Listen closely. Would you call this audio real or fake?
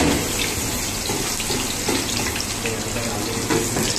real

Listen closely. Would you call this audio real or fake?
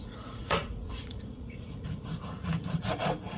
fake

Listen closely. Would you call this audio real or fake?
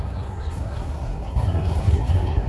fake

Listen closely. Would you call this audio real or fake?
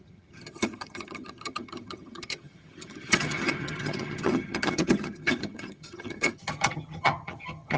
fake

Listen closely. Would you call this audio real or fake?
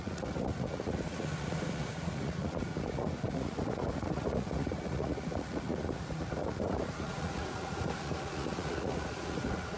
fake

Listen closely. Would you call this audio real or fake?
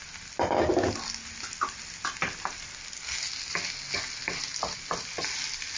real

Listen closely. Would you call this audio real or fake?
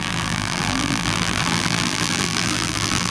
fake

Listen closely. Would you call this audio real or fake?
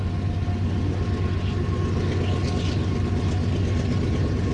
real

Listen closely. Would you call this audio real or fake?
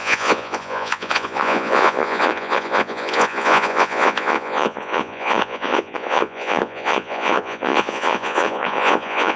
fake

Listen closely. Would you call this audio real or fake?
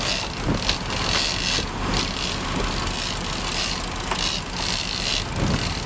real